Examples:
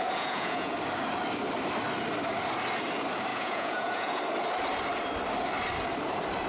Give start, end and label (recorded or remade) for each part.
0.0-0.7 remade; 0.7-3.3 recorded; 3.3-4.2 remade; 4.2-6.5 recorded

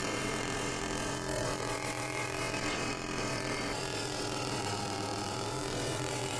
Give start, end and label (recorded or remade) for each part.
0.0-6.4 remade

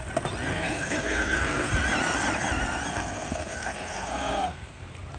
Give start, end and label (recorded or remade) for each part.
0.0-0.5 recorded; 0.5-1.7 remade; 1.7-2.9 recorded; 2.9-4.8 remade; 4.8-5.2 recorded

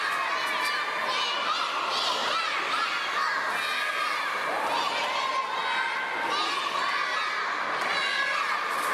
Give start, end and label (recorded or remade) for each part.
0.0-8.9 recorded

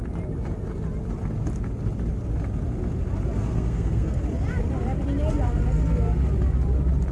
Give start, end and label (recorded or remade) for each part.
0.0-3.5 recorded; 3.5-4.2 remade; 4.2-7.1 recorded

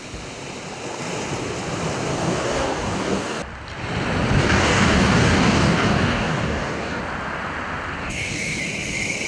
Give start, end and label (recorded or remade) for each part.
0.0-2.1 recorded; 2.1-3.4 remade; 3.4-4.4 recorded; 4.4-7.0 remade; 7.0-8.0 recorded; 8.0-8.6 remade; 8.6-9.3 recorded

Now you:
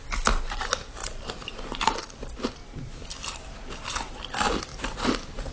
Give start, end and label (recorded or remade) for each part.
0.0-1.0 recorded; 1.0-1.9 remade; 1.9-2.6 recorded; 2.6-4.2 remade; 4.2-4.7 recorded; 4.7-5.5 remade